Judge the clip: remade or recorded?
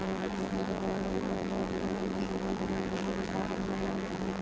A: remade